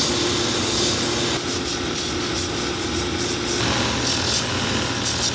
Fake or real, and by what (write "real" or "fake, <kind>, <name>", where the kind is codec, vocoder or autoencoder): real